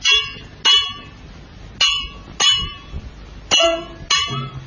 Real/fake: real